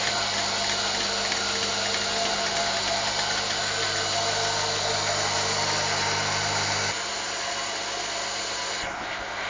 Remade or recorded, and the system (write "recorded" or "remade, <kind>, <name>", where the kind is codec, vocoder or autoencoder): recorded